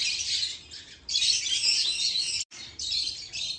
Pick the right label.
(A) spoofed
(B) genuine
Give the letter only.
B